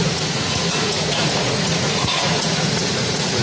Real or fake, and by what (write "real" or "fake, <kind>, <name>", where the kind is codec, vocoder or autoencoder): fake, vocoder, Vocos